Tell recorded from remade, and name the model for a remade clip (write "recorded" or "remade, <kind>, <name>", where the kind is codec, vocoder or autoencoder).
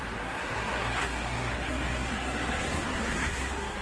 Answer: remade, codec, SNAC